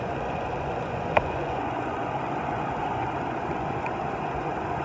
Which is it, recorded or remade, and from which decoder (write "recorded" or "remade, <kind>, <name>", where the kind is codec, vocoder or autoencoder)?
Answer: remade, vocoder, Vocos